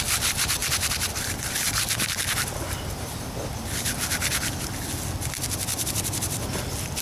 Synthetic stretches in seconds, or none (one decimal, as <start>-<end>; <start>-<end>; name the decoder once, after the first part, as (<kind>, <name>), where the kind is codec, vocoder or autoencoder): 0.6-4.1 (vocoder, BigVGAN v2); 5.7-6.5